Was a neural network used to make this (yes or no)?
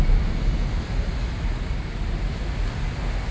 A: no